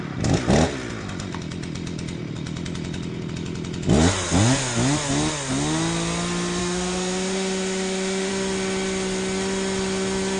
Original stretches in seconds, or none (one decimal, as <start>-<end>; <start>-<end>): 0.0-6.6; 8.3-10.4